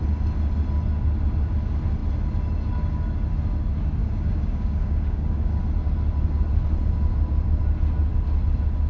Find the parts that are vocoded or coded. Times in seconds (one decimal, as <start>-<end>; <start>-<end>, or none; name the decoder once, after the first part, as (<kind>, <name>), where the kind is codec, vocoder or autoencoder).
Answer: 4.0-5.6 (codec, DAC)